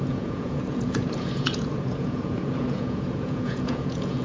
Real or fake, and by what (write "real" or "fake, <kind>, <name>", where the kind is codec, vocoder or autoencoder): fake, vocoder, Vocos